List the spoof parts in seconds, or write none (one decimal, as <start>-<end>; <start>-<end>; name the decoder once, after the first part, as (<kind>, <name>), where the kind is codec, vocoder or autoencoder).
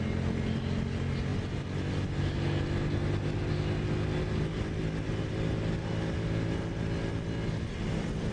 none